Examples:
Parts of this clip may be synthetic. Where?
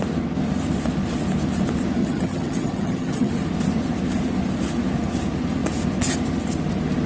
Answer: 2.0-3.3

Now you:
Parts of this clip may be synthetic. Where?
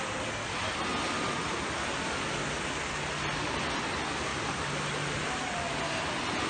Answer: 4.3-5.6